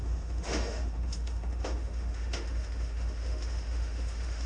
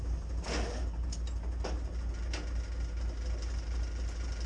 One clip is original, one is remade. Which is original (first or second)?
second